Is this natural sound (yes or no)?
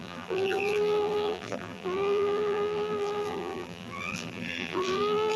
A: no